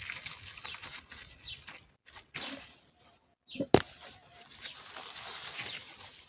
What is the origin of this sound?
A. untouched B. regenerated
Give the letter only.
A